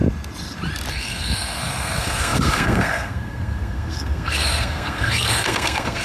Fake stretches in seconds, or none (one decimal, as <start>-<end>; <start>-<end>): 0.9-6.0